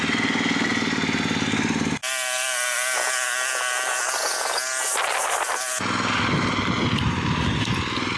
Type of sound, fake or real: real